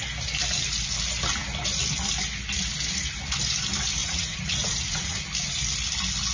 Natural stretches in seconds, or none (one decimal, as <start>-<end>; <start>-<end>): 0.0-4.0; 5.2-6.3